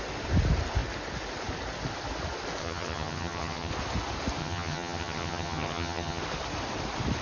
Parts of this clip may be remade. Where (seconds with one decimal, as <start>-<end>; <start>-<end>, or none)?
2.6-3.7; 4.4-6.2

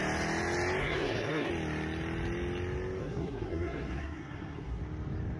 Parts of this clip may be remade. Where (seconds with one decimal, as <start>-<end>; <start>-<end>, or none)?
0.8-1.5; 3.0-4.8